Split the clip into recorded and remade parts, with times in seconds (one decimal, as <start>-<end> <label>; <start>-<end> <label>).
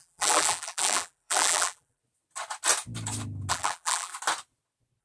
0.0-2.0 remade; 2.0-3.5 recorded; 3.5-4.1 remade; 4.1-5.0 recorded